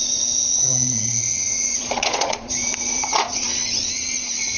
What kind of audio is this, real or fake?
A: fake